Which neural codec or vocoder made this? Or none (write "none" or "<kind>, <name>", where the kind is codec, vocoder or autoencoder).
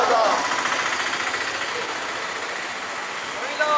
none